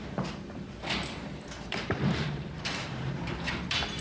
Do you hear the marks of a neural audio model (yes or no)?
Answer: yes